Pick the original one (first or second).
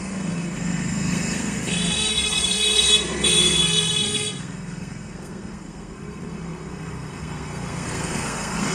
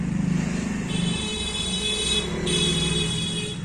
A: second